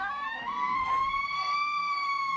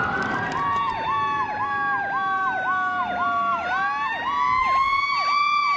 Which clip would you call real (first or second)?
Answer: second